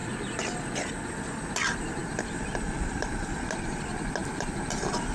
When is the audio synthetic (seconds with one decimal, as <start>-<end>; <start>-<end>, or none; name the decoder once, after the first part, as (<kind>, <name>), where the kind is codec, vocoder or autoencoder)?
4.2-5.1 (vocoder, BigVGAN v2)